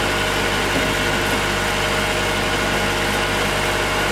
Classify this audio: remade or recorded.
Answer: recorded